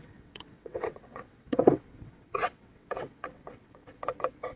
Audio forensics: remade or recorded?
remade